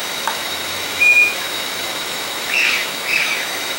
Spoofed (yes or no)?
yes